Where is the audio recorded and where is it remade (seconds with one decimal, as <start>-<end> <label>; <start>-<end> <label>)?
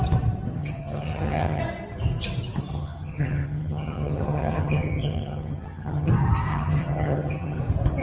0.0-0.6 recorded; 0.6-1.6 remade; 1.6-2.7 recorded; 2.7-6.1 remade; 6.1-6.5 recorded; 6.5-7.6 remade; 7.6-8.0 recorded